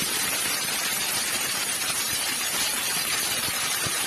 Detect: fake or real fake